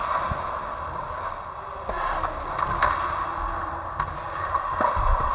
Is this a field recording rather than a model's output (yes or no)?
yes